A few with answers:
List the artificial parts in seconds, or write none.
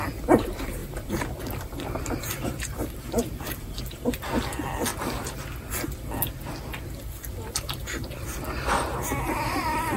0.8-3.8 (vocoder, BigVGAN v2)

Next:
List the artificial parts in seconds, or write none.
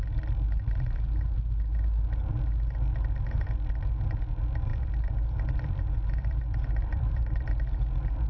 4.7-7.5 (vocoder, BigVGAN v2)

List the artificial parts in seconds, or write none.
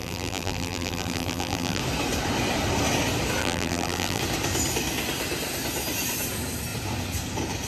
0.0-1.8 (vocoder, BigVGAN v2); 3.4-4.2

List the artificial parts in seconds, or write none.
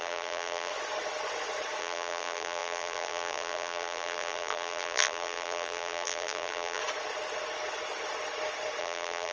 0.0-0.7 (vocoder, BigVGAN v2); 1.8-6.8; 8.8-9.3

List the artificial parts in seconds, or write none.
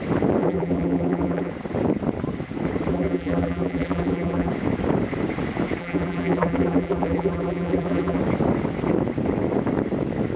0.4-1.5 (vocoder, BigVGAN v2); 2.9-4.5; 5.8-8.2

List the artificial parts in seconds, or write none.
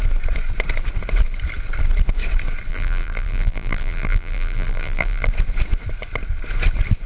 2.7-5.3 (vocoder, BigVGAN v2)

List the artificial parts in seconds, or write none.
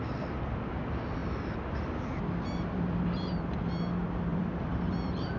1.2-3.8 (vocoder, BigVGAN v2); 4.3-5.4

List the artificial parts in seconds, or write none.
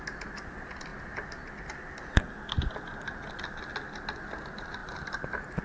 4.8-5.6 (vocoder, BigVGAN v2)